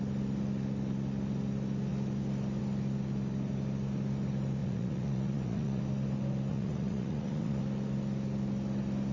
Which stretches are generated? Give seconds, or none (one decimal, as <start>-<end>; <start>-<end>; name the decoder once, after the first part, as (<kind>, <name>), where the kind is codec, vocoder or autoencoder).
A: 4.6-5.8 (vocoder, Vocos); 6.5-7.6